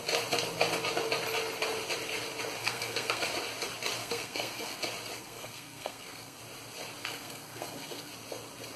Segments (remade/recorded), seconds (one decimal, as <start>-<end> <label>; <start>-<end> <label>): 0.0-2.6 recorded; 2.6-3.3 remade; 3.3-4.0 recorded; 4.0-4.8 remade; 4.8-5.2 recorded; 5.2-6.4 remade; 6.4-7.0 recorded; 7.0-8.1 remade; 8.1-8.8 recorded